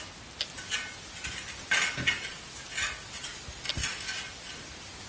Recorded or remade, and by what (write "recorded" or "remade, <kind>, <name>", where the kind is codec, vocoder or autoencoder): recorded